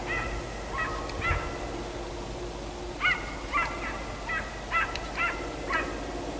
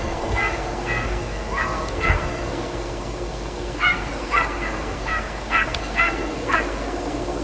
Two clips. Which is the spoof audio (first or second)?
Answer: second